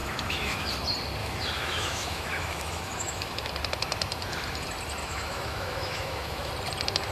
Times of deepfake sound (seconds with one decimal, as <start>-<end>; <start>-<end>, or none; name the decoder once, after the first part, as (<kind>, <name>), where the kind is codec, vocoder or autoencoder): 0.0-0.7 (autoencoder, DAC-VAE); 1.2-3.5; 5.0-6.5